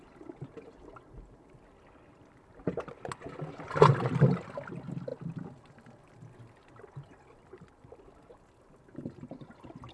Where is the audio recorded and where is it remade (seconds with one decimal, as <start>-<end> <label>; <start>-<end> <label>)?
0.0-9.9 recorded